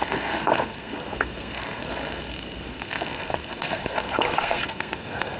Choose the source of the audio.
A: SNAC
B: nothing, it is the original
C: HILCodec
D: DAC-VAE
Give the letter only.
A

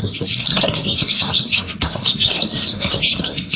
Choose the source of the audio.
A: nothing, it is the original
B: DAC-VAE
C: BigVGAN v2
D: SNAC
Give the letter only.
D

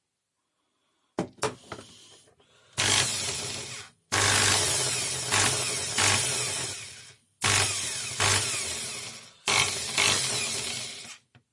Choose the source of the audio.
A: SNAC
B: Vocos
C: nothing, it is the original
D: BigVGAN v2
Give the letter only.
C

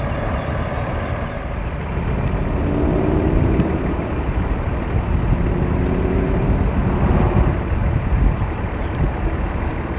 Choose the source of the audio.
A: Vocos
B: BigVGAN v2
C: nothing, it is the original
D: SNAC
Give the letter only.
C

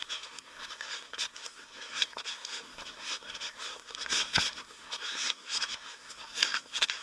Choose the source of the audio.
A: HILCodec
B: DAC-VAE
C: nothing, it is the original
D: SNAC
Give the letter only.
D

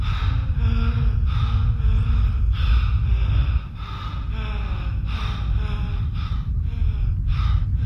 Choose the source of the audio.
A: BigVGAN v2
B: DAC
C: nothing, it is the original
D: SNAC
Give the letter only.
C